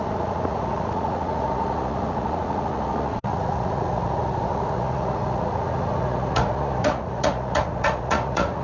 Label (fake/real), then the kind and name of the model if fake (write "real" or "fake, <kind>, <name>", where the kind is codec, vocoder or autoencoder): fake, vocoder, Vocos